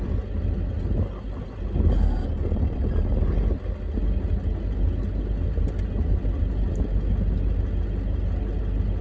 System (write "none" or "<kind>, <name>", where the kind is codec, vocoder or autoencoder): none